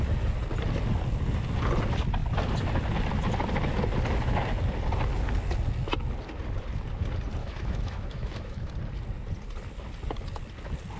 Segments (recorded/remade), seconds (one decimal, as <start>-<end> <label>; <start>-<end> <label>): 0.0-7.4 recorded; 7.4-8.7 remade; 8.7-11.0 recorded